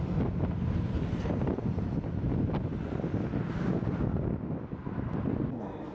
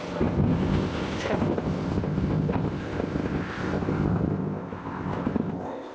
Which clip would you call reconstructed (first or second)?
second